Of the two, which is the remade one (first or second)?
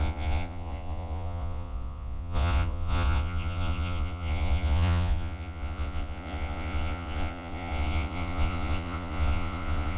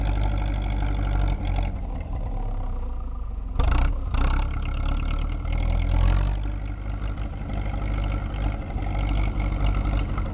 first